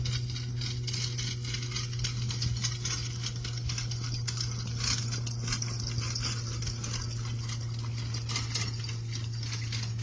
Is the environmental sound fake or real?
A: real